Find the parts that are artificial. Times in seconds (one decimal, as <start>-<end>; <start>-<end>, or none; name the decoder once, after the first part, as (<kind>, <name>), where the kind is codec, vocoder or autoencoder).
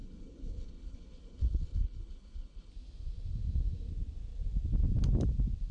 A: 0.0-2.7 (codec, HILCodec)